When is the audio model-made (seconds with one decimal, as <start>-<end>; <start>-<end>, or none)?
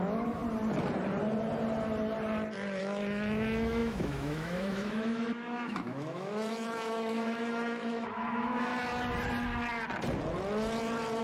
0.0-0.4; 2.8-8.7